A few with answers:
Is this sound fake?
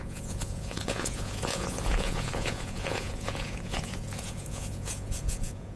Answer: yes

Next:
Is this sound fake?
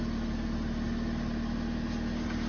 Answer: no